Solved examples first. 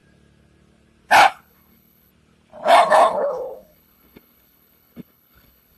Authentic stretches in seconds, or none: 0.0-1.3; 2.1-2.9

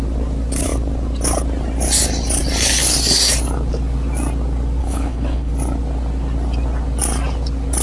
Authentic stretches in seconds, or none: 0.0-4.8; 5.5-7.8

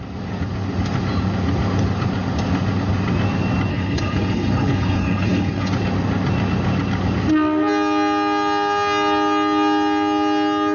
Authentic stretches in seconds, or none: 0.0-3.7; 5.7-10.7

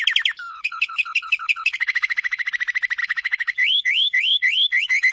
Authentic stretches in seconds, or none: 0.0-0.5; 2.5-3.0